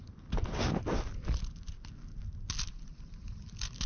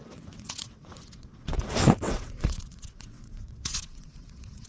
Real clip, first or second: first